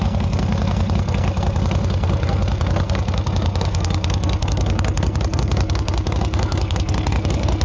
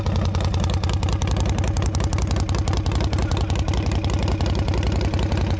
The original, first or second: second